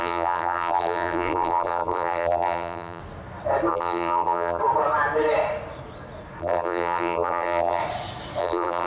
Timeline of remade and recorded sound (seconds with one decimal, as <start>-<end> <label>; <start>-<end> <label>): 0.0-3.0 remade; 3.0-3.7 recorded; 3.7-4.6 remade; 4.6-6.4 recorded; 6.4-7.8 remade; 7.8-8.4 recorded; 8.4-8.9 remade